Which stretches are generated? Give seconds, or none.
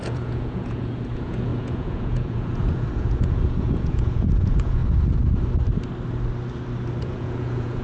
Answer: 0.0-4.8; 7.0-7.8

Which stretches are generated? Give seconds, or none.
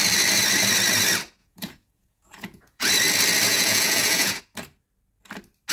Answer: 1.4-2.9; 3.5-4.4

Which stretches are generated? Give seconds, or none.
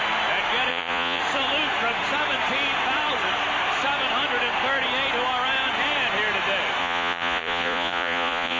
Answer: 0.7-1.2; 6.8-8.6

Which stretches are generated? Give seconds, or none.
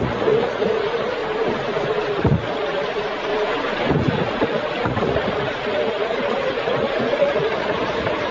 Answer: 0.0-1.2; 2.1-3.3; 3.9-8.3